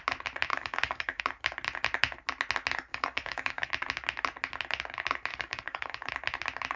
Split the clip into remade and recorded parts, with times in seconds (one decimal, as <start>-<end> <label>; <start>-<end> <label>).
0.0-0.5 recorded; 0.5-1.2 remade; 1.2-2.9 recorded; 2.9-3.7 remade; 3.7-5.3 recorded; 5.3-6.1 remade; 6.1-6.8 recorded

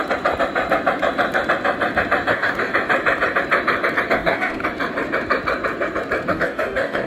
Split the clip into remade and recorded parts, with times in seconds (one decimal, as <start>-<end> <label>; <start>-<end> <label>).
0.0-2.3 recorded; 2.3-2.7 remade; 2.7-4.1 recorded; 4.1-4.6 remade; 4.6-6.3 recorded; 6.3-7.1 remade